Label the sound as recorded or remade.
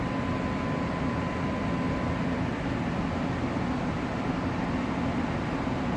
recorded